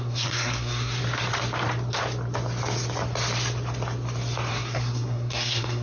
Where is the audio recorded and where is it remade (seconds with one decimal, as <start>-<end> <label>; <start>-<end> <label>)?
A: 0.0-1.0 remade; 1.0-4.5 recorded; 4.5-5.8 remade